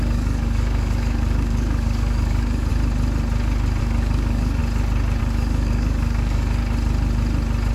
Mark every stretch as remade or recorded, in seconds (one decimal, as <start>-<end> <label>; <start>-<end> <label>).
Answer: 0.0-2.7 remade; 2.7-3.8 recorded; 3.8-4.6 remade; 4.6-5.2 recorded; 5.2-6.6 remade; 6.6-7.7 recorded